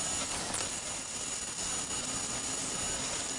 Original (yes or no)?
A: yes